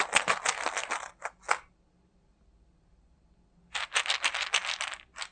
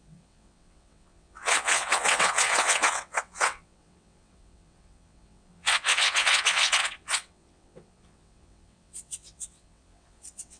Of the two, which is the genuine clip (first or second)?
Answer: first